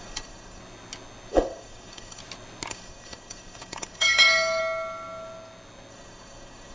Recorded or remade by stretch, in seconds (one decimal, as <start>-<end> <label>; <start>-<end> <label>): 0.0-0.6 remade; 0.6-1.3 recorded; 1.3-2.2 remade; 2.2-2.7 recorded; 2.7-4.6 remade; 4.6-5.9 recorded; 5.9-6.7 remade